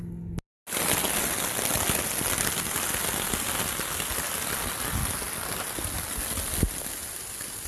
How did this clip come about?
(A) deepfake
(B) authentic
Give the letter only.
B